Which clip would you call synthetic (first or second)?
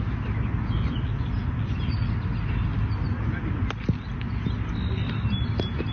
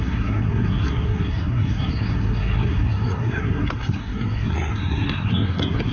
second